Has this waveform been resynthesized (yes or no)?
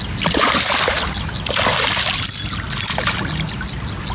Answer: no